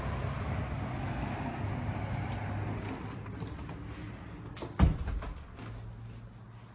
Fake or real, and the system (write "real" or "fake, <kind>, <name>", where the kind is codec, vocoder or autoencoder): real